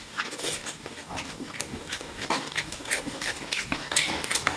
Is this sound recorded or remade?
remade